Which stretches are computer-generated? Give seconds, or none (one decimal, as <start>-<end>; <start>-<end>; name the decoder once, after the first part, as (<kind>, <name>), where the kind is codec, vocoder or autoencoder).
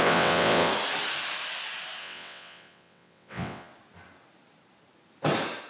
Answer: 0.0-0.7 (vocoder, WaveNeXt); 2.0-3.7